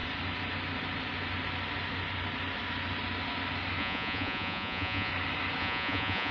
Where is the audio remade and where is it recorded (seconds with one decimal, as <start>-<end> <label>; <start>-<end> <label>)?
0.0-3.8 recorded; 3.8-5.1 remade; 5.1-5.6 recorded; 5.6-6.3 remade

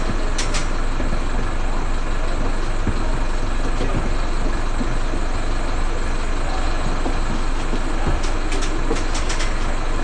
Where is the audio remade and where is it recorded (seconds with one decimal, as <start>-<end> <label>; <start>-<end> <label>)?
0.0-10.0 recorded